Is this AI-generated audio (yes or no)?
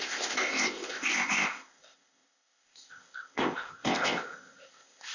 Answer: yes